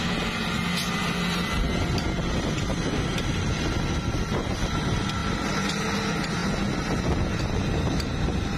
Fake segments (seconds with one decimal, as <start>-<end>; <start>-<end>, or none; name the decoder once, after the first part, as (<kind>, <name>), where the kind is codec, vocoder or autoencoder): 2.2-4.2 (vocoder, BigVGAN v2)